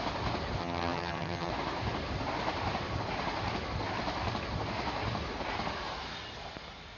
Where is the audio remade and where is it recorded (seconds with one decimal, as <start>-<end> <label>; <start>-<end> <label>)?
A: 0.0-0.6 recorded; 0.6-1.5 remade; 1.5-7.0 recorded